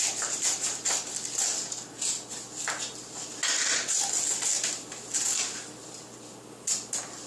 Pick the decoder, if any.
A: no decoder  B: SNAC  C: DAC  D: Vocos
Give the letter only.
A